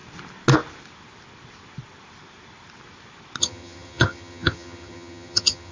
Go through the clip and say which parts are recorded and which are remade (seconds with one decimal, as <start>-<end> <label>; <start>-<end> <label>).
0.0-3.4 recorded; 3.4-5.7 remade